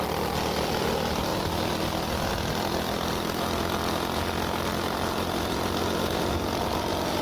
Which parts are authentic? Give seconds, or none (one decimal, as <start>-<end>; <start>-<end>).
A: 0.0-7.2